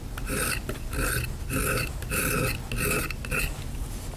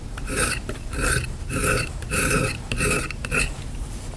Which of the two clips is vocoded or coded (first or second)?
second